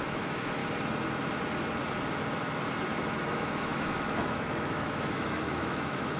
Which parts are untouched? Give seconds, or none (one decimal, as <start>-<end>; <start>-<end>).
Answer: 0.6-3.0